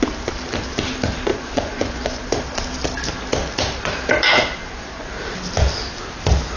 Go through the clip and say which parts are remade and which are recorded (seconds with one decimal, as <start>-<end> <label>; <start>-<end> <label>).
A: 0.0-1.3 recorded; 1.3-2.4 remade; 2.4-4.6 recorded; 4.6-5.1 remade; 5.1-6.6 recorded